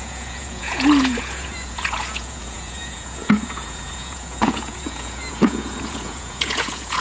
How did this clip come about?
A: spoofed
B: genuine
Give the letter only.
A